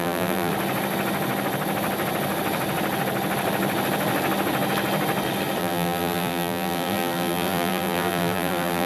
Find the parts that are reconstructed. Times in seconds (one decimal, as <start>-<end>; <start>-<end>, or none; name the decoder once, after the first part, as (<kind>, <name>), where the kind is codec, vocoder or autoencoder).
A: 0.0-0.5 (vocoder, BigVGAN v2); 5.6-8.9